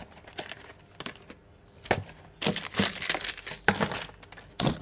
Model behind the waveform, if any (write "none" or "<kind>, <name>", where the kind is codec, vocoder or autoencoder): none